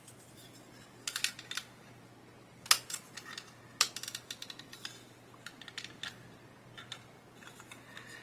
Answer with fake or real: real